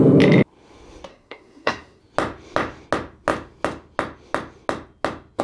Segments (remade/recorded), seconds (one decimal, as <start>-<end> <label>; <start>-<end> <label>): 0.0-1.1 recorded; 1.1-2.0 remade; 2.0-5.4 recorded